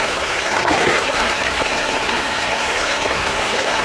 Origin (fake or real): fake